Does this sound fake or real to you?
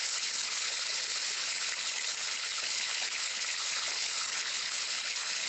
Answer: fake